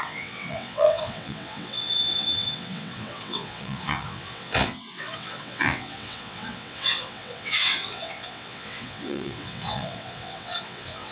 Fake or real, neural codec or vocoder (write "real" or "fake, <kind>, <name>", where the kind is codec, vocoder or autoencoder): fake, vocoder, WaveNeXt